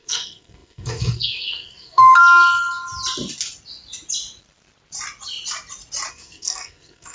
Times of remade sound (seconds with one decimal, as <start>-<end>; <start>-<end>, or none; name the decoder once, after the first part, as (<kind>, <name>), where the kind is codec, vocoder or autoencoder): 0.0-2.2 (codec, SNAC); 6.1-7.1